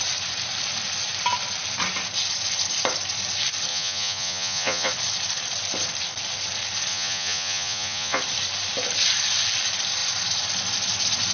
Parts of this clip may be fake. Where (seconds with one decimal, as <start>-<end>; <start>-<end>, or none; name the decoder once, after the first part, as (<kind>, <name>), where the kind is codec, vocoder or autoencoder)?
3.7-4.9 (vocoder, Vocos); 6.9-8.2